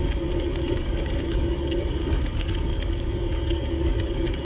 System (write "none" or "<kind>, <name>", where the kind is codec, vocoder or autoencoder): codec, DAC